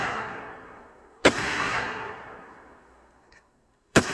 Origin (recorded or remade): remade